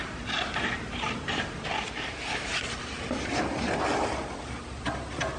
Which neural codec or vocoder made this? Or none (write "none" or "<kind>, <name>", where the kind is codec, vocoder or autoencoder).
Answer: none